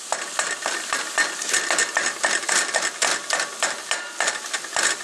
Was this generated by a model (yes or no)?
no